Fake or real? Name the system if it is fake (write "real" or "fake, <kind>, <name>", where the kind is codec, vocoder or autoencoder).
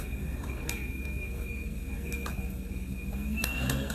fake, codec, SNAC